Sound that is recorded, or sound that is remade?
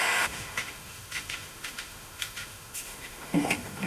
remade